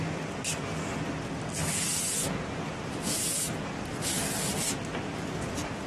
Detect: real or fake real